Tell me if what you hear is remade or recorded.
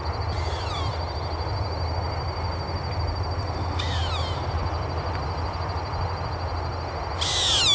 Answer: recorded